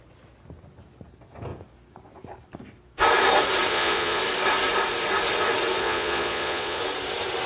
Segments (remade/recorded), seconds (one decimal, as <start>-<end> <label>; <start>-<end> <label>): 0.0-3.7 recorded; 3.7-4.2 remade; 4.2-5.8 recorded; 5.8-6.8 remade; 6.8-7.5 recorded